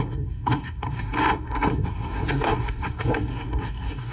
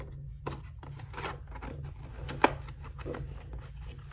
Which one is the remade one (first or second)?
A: first